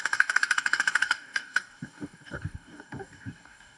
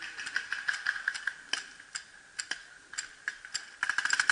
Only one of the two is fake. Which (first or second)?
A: first